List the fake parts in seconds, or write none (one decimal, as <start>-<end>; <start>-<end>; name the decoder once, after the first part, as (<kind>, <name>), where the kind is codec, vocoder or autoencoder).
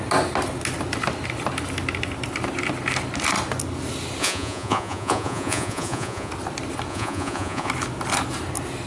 4.2-6.3 (vocoder, Vocos); 6.9-7.7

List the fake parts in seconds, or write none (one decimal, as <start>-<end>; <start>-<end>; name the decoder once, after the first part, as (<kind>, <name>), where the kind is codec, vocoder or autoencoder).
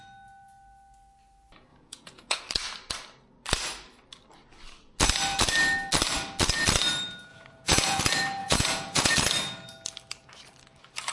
1.7-2.5 (vocoder, Vocos); 7.3-8.0; 8.4-9.1